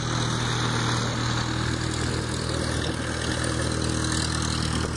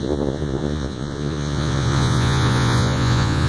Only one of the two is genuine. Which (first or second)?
first